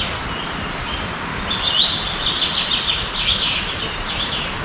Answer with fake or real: real